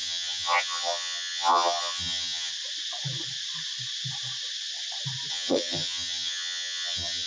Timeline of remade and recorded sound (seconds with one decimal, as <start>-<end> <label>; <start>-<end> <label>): 0.0-2.5 remade; 2.5-5.3 recorded; 5.3-7.3 remade